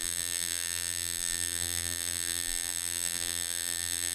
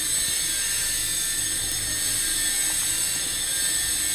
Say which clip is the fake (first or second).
first